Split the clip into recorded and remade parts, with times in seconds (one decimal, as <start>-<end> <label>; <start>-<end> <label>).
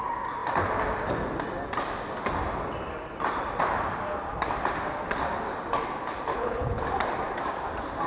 0.0-6.3 recorded; 6.3-6.8 remade; 6.8-8.1 recorded